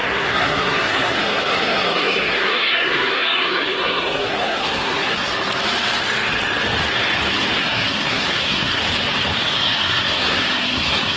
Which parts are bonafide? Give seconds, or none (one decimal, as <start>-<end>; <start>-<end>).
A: 5.3-7.6; 8.8-9.5